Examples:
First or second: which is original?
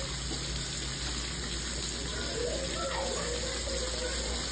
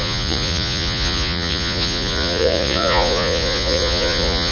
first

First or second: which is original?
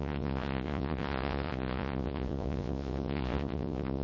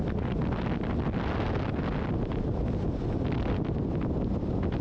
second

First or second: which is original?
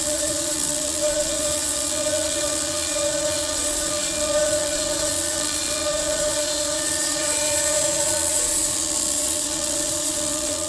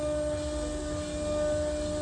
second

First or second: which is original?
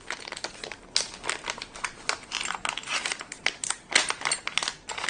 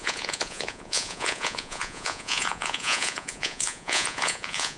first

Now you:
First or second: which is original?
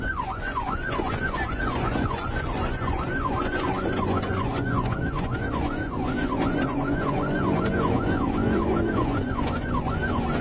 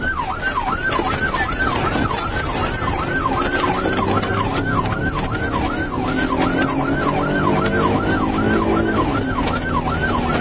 second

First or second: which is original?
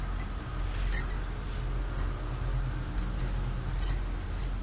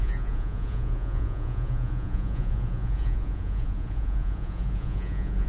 first